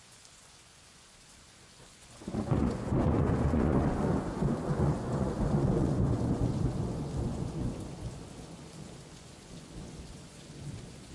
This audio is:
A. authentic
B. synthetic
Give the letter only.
B